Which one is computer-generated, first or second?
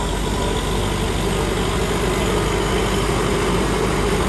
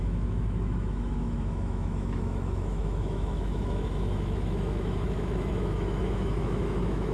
second